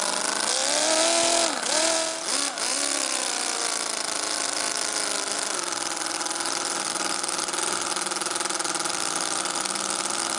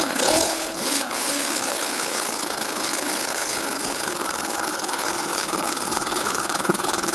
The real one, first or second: first